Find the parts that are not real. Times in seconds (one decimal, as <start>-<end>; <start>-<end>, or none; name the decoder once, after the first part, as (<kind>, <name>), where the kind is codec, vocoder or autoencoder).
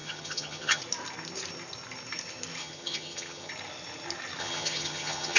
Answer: 0.0-0.8 (vocoder, HiFi-GAN); 2.6-3.5; 4.4-5.4